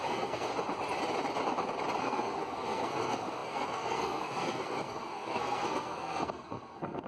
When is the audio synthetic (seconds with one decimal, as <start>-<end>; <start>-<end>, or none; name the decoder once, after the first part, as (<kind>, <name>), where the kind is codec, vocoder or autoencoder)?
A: 0.0-0.5 (codec, SNAC); 2.0-7.1

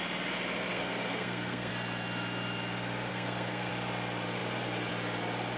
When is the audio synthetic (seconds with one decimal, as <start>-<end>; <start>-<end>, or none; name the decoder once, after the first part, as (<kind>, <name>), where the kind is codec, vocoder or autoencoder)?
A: 0.7-1.7 (codec, SNAC); 3.1-3.7

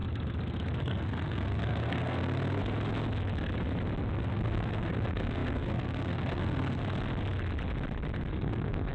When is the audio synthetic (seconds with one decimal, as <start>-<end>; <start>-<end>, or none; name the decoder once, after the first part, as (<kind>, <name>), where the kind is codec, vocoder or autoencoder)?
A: 0.8-2.6 (codec, SNAC); 4.2-6.8; 8.3-8.9

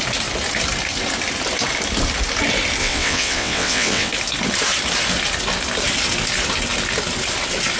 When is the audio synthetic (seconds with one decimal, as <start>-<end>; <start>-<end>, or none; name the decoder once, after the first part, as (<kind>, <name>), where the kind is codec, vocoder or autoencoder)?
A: 2.8-4.1 (vocoder, WaveNeXt)

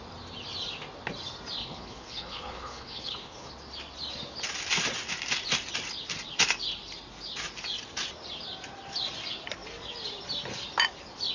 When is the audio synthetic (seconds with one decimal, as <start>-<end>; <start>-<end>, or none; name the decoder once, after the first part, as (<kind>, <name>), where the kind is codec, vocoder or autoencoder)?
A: 1.6-3.5 (codec, HILCodec)

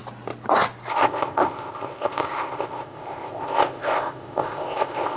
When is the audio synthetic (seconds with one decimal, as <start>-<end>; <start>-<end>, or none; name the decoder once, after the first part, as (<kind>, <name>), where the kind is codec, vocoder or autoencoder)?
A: 0.9-5.2 (codec, ZipCodec)